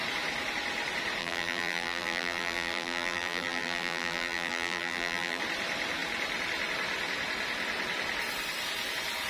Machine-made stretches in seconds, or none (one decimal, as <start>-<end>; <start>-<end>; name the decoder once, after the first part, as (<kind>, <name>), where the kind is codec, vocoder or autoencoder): 1.2-5.4 (vocoder, BigVGAN v2)